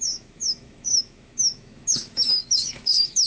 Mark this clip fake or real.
fake